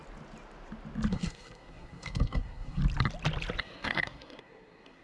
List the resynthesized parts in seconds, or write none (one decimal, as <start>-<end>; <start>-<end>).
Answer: 1.1-2.8; 3.6-5.0